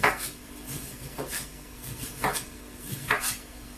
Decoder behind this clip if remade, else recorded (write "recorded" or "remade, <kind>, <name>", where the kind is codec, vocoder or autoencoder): remade, codec, SNAC